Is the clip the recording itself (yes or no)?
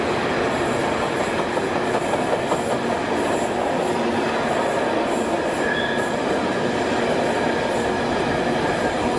yes